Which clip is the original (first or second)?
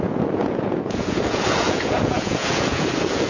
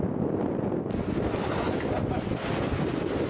second